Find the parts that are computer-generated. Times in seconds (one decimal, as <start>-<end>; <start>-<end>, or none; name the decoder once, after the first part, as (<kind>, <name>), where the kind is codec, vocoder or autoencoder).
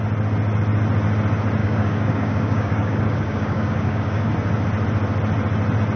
1.6-4.3 (codec, DAC)